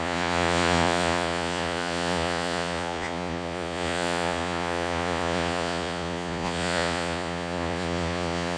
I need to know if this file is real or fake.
fake